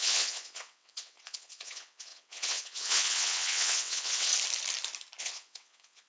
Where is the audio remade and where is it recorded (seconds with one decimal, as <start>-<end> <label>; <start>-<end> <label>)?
0.0-4.3 remade; 4.3-5.2 recorded; 5.2-6.1 remade